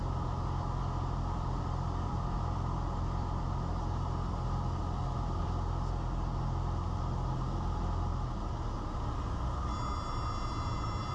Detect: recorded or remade recorded